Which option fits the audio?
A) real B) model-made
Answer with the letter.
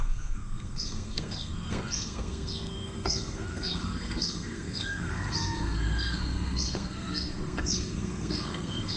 B